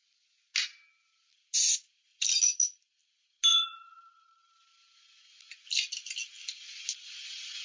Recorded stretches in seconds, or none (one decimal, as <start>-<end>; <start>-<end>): 0.0-3.5; 4.5-7.6